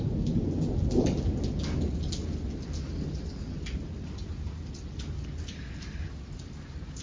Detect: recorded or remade recorded